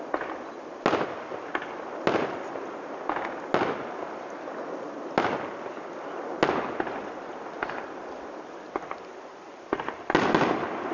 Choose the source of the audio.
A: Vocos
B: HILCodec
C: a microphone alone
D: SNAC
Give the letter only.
C